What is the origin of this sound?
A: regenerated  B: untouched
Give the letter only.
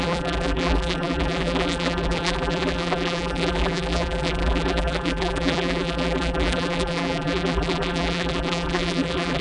A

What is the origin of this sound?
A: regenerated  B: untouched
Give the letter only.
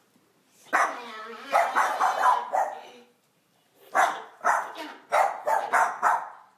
A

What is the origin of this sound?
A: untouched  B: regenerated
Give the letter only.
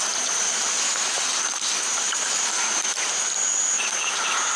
B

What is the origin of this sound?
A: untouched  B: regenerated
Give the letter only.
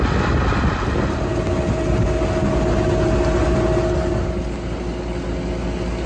A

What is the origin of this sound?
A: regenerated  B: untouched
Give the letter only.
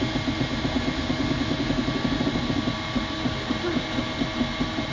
B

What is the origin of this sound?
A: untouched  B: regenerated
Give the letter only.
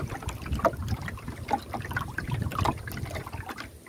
B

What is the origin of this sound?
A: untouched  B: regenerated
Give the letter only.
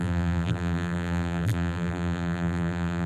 B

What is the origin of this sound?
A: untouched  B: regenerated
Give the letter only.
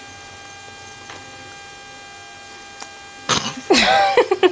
A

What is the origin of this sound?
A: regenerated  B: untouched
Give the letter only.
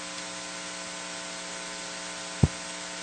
B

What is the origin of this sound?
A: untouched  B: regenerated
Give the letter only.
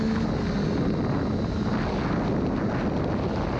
A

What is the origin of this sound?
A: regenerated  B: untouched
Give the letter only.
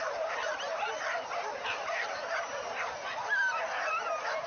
B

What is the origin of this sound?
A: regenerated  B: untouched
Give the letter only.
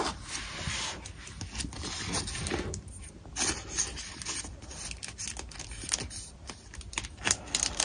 B